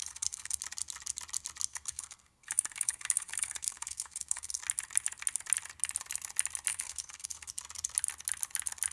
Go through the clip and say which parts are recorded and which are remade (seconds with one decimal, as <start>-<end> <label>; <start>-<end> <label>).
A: 0.0-0.6 remade; 0.6-1.7 recorded; 1.7-4.6 remade; 4.6-6.7 recorded; 6.7-7.5 remade; 7.5-8.9 recorded